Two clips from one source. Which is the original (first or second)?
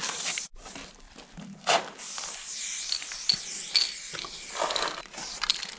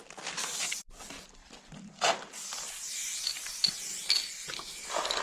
first